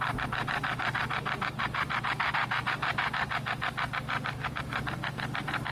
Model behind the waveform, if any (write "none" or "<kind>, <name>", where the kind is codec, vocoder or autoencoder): none